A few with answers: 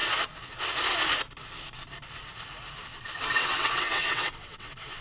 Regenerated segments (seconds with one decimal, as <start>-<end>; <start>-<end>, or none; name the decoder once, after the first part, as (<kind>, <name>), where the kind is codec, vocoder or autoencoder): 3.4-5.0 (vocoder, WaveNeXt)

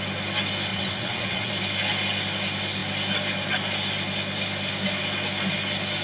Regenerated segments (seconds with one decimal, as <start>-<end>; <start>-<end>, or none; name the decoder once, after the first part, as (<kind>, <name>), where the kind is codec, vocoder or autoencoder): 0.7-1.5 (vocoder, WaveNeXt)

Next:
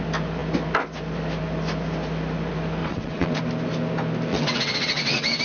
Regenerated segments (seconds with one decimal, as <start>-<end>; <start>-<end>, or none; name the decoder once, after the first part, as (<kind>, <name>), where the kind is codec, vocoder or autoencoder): 2.8-3.4 (vocoder, WaveNeXt); 4.3-5.4